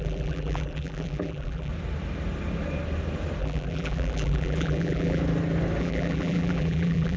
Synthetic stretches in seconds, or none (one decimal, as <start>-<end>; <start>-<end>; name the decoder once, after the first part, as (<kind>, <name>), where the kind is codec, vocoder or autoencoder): 0.0-1.7 (vocoder, BigVGAN v2); 3.4-5.2; 5.8-7.2